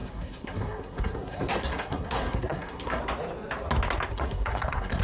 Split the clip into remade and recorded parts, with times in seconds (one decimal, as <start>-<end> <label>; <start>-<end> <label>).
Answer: 0.0-3.0 remade; 3.0-4.1 recorded; 4.1-5.0 remade